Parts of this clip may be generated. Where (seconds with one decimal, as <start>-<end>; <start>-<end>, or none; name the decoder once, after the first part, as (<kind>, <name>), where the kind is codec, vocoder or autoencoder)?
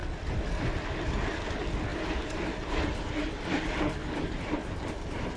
1.9-3.6 (vocoder, BigVGAN v2); 4.0-4.9